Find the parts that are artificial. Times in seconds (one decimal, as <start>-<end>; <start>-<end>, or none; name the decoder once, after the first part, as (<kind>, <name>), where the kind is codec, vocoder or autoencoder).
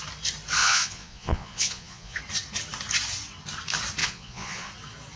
0.6-2.2 (vocoder, Vocos); 4.0-4.7